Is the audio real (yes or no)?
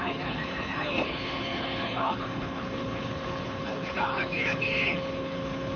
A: no